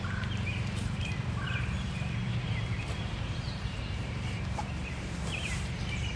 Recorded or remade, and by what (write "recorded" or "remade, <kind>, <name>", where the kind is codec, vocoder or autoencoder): remade, vocoder, BigVGAN v2